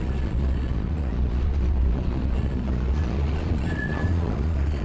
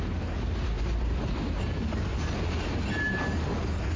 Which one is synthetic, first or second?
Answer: first